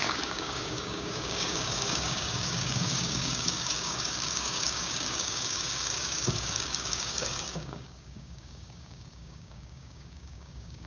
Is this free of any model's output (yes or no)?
no